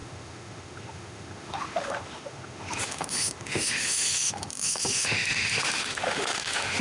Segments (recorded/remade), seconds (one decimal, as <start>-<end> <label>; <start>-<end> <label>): 0.0-6.8 remade